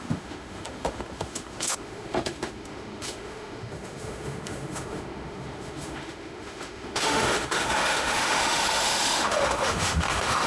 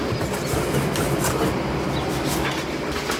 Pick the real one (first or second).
second